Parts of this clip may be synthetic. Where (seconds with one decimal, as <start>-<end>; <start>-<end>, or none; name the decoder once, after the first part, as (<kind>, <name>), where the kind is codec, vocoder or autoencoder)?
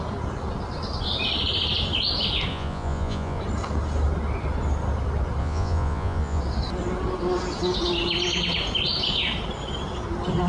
2.5-3.4 (vocoder, Vocos); 5.4-6.4